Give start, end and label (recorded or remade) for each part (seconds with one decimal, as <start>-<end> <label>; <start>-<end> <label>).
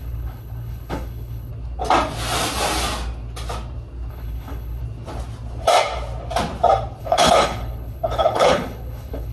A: 0.0-1.5 remade; 1.5-4.1 recorded; 4.1-4.8 remade; 4.8-7.0 recorded; 7.0-9.3 remade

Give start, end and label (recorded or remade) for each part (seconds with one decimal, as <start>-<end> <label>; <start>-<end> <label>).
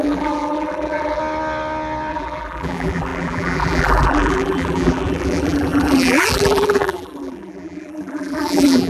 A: 0.0-1.2 remade; 1.2-2.1 recorded; 2.1-8.9 remade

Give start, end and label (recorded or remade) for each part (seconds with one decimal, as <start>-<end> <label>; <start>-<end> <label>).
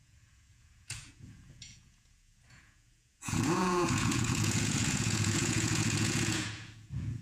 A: 0.0-7.2 remade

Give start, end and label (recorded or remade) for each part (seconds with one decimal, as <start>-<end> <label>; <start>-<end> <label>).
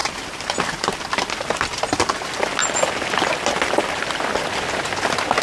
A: 0.0-1.0 remade; 1.0-1.7 recorded; 1.7-2.5 remade; 2.5-5.4 recorded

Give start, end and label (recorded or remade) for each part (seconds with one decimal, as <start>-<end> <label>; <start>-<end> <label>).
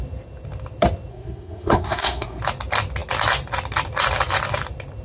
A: 0.0-1.1 recorded; 1.1-2.4 remade; 2.4-5.0 recorded